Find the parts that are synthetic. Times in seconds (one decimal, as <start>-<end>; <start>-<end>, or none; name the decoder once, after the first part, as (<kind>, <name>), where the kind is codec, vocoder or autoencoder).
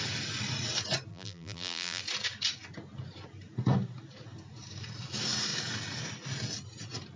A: 1.1-2.0 (vocoder, BigVGAN v2)